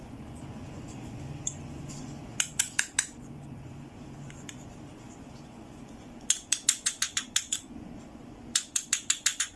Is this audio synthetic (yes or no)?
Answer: yes